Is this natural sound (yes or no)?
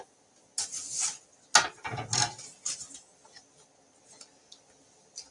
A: yes